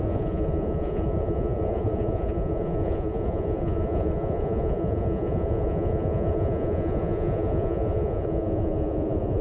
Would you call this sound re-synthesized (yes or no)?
yes